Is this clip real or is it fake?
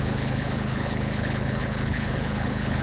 fake